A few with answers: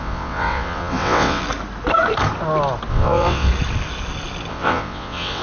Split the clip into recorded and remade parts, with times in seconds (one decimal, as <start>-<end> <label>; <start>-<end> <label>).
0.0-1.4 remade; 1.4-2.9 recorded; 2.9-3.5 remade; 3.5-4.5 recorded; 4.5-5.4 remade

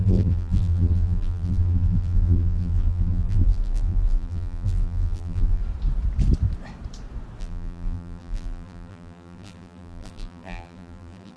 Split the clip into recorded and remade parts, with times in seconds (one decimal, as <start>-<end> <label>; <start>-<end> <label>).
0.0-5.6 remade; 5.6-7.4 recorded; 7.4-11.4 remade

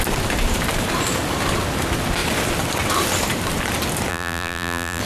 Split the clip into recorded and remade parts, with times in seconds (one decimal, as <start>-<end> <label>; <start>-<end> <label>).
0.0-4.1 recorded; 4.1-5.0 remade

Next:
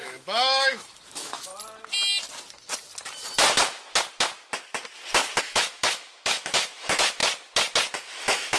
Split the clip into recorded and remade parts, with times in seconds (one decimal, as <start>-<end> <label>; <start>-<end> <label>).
0.0-1.5 remade; 1.5-5.4 recorded; 5.4-7.2 remade; 7.2-7.9 recorded; 7.9-8.6 remade

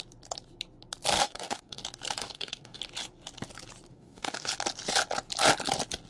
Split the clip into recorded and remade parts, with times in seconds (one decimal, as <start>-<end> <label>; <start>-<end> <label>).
0.0-1.1 recorded; 1.1-1.8 remade; 1.8-2.2 recorded; 2.2-2.8 remade; 2.8-3.9 recorded; 3.9-4.5 remade; 4.5-6.1 recorded

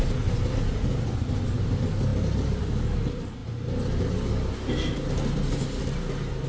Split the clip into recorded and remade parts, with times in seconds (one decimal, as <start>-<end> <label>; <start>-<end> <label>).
0.0-6.5 recorded